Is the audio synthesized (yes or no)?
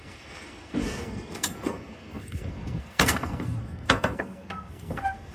yes